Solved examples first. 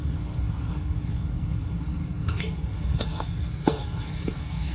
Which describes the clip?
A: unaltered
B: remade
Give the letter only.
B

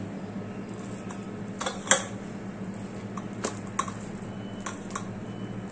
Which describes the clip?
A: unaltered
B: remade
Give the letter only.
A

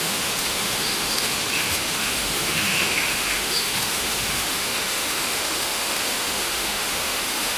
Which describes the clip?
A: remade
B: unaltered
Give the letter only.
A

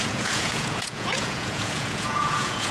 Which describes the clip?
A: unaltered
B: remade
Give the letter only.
B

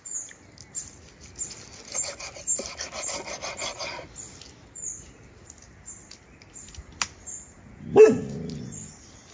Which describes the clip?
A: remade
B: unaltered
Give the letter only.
B